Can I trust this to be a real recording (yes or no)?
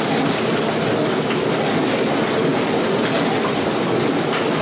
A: yes